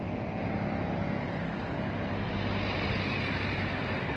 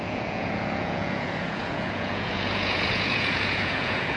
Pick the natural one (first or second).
first